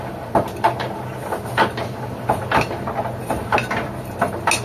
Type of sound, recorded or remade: recorded